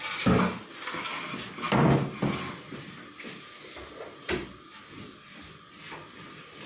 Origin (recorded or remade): recorded